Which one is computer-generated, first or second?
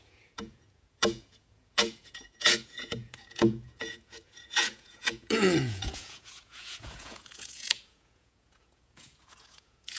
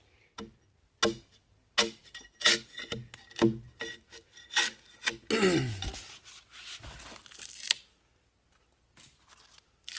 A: first